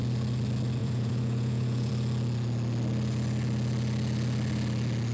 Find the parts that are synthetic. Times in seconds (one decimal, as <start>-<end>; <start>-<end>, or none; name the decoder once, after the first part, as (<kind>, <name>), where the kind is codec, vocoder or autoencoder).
0.8-1.9 (vocoder, Vocos)